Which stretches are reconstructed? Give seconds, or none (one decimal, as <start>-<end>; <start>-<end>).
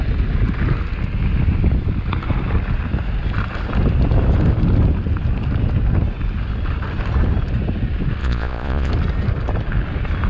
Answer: 8.2-8.9